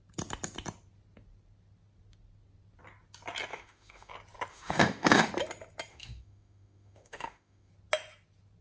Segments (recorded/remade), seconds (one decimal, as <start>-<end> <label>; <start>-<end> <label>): 0.0-3.5 recorded; 3.5-4.1 remade; 4.1-4.5 recorded; 4.5-5.3 remade; 5.3-5.9 recorded; 5.9-7.7 remade; 7.7-8.6 recorded